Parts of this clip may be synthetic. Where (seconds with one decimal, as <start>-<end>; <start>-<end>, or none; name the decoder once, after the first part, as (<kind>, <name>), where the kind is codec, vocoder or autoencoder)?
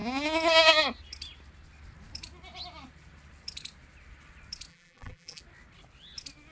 4.7-5.4 (vocoder, BigVGAN v2)